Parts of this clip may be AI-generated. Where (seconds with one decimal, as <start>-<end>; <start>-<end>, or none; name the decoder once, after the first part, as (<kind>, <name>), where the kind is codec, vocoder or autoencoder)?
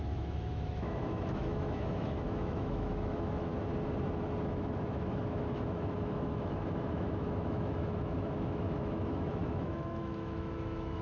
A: 0.0-3.5 (autoencoder, DAC-VAE); 4.4-11.0